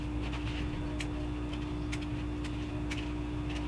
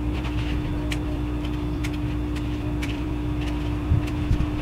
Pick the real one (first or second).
first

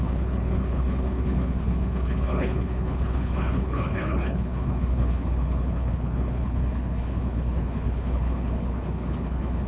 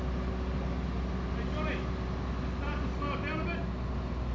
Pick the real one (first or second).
second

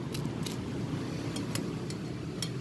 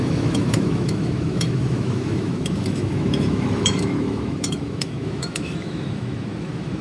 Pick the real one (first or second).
first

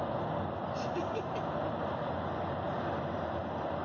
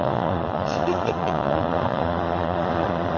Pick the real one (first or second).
first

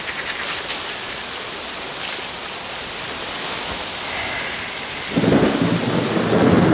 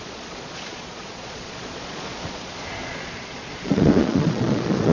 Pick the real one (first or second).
first